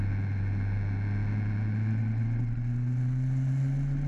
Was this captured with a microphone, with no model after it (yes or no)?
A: yes